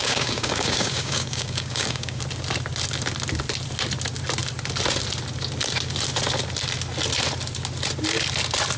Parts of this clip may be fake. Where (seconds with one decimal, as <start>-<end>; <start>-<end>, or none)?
0.0-2.2